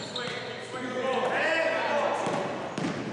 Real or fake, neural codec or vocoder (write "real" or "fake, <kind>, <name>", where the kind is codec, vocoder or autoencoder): real